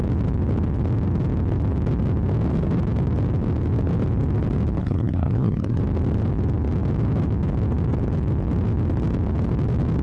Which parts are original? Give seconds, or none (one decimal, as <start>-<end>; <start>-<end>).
0.0-4.8; 5.8-10.0